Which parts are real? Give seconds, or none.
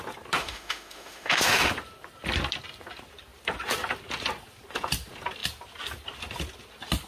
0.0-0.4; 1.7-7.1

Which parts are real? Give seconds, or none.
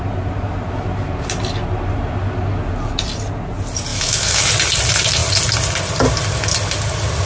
0.0-3.9; 4.5-7.3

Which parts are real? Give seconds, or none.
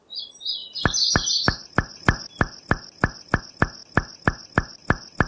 0.0-0.6; 3.4-5.3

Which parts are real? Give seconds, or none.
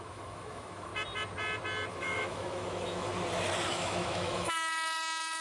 0.9-1.9; 3.1-3.7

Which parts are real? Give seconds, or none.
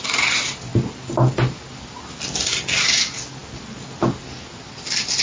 0.0-5.2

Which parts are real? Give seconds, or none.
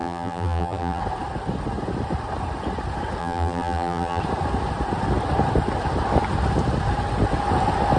1.0-3.2; 4.2-8.0